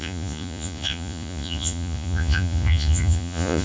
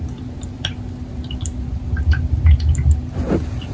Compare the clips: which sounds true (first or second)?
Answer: second